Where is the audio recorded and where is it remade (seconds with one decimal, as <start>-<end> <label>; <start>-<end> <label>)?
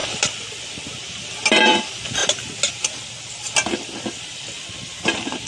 0.0-5.5 recorded